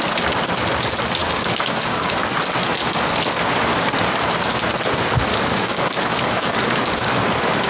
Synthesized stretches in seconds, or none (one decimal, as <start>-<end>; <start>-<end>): 1.2-2.3; 2.8-3.3; 5.3-7.2